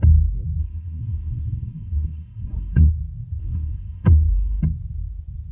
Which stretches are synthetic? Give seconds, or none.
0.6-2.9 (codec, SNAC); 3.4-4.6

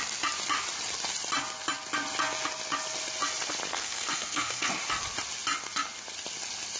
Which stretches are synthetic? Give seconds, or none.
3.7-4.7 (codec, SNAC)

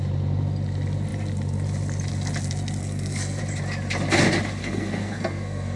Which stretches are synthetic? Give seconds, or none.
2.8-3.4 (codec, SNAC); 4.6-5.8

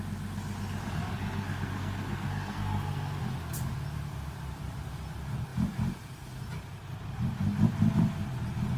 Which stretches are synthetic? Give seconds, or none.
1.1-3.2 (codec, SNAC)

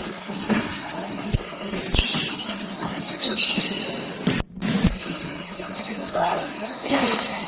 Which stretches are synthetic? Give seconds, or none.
0.0-1.8 (codec, SNAC); 2.3-3.8; 4.9-7.5